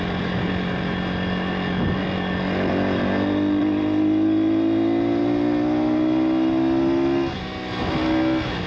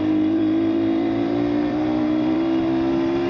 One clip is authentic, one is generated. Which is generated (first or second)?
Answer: second